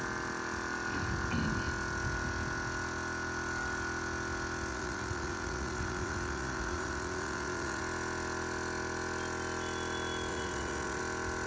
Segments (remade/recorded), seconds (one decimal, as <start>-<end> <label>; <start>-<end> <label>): 0.0-4.7 recorded; 4.7-7.8 remade; 7.8-10.3 recorded; 10.3-11.0 remade; 11.0-11.5 recorded